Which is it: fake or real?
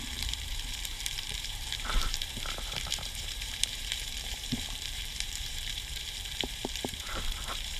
fake